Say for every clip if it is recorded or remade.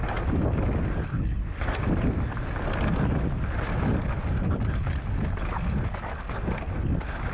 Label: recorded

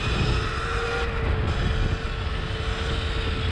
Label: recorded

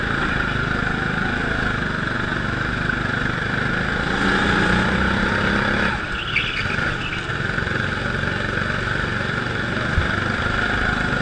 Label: recorded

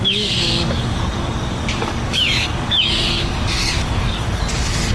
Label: remade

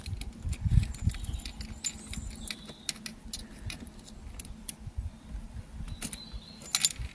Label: recorded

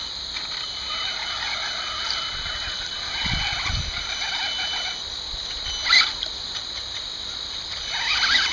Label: recorded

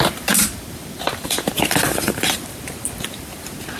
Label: remade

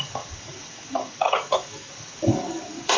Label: remade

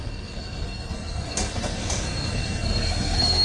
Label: remade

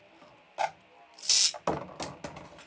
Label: recorded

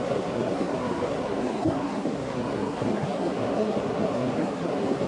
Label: remade